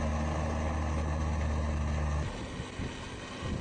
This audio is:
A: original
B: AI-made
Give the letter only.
A